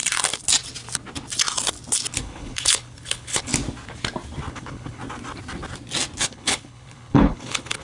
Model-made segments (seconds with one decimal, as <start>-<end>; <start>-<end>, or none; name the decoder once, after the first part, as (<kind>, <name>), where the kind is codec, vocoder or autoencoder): 2.2-3.5 (codec, HILCodec); 4.5-5.0; 6.2-7.8